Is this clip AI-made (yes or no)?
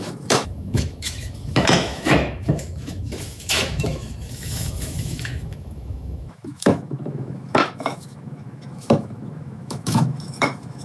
yes